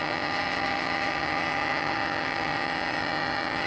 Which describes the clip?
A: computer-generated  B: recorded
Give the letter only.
A